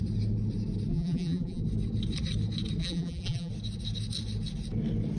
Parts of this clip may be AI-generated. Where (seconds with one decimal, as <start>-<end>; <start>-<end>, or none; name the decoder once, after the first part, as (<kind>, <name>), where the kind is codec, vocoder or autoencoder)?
0.9-1.6 (vocoder, BigVGAN v2); 2.8-3.5

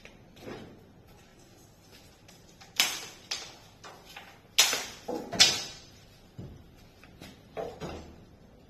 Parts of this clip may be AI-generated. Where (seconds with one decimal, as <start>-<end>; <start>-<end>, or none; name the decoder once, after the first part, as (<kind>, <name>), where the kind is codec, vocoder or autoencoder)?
0.0-1.3 (vocoder, BigVGAN v2); 5.5-8.7

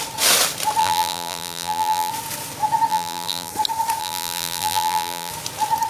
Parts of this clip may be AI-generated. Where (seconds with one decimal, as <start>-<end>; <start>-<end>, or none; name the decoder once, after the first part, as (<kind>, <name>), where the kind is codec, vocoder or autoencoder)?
0.8-2.1 (vocoder, BigVGAN v2); 2.9-3.5; 4.0-5.3

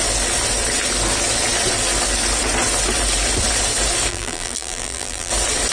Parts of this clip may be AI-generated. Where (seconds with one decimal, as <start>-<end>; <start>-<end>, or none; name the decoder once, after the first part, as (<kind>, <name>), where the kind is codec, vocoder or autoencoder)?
4.1-5.3 (vocoder, BigVGAN v2)

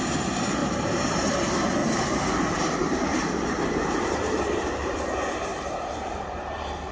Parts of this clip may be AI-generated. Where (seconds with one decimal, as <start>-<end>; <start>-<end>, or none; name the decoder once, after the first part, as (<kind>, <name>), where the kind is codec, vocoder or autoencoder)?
0.6-1.4 (vocoder, BigVGAN v2); 1.8-5.1; 5.5-6.4

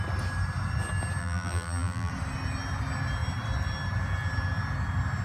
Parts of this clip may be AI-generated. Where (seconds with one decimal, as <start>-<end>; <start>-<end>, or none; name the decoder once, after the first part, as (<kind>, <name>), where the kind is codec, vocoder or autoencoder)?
1.2-2.1 (vocoder, BigVGAN v2)

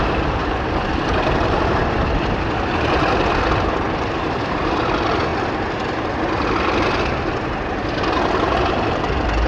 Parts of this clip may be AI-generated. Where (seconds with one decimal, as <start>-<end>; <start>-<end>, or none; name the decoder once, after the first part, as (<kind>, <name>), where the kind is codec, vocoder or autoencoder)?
0.4-2.2 (vocoder, BigVGAN v2)